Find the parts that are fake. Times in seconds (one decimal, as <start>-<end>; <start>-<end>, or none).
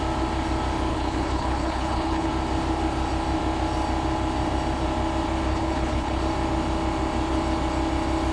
0.9-2.3; 5.5-6.2